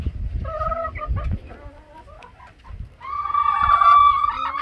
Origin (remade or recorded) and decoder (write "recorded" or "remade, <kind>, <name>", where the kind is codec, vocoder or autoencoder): recorded